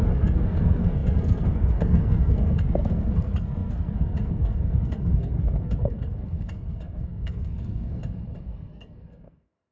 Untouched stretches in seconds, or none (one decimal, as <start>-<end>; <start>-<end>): none